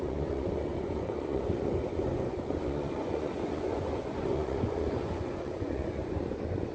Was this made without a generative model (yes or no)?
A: no